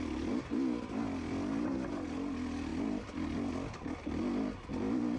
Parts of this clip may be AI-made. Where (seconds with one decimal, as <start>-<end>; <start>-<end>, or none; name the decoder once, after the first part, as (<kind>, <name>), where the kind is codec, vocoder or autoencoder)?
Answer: none